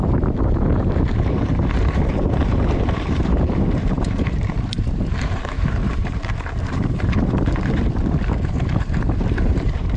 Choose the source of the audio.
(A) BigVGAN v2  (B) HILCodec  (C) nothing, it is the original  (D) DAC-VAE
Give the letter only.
A